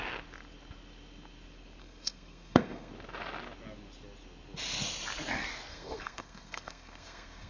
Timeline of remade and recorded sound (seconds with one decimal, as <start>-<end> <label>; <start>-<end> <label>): 0.0-1.8 recorded; 1.8-2.9 remade; 2.9-5.7 recorded; 5.7-7.5 remade